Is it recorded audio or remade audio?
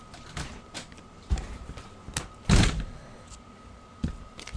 recorded